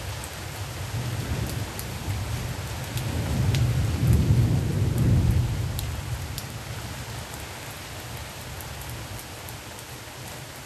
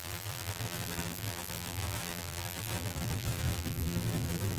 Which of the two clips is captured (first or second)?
first